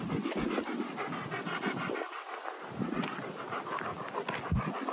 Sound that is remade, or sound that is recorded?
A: recorded